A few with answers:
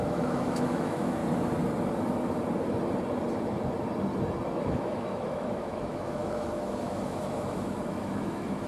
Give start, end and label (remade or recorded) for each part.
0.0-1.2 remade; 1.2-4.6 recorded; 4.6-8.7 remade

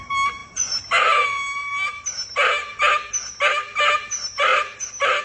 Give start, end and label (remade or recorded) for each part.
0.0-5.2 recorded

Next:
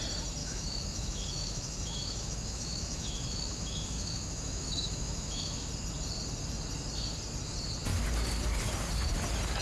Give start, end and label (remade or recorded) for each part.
0.0-0.4 recorded; 0.4-5.7 remade; 5.7-9.6 recorded

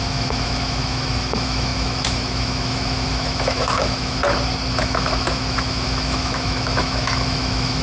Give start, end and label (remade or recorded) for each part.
0.0-4.2 remade; 4.2-4.7 recorded; 4.7-7.8 remade